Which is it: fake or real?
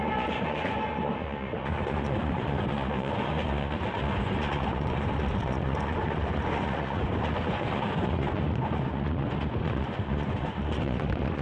fake